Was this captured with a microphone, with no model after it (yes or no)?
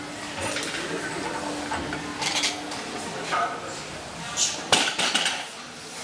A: yes